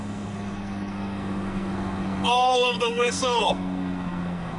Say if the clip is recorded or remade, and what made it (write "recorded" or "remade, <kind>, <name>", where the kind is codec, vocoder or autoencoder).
remade, codec, SNAC